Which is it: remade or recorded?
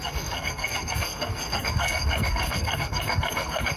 remade